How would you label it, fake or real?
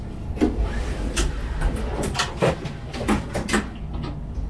real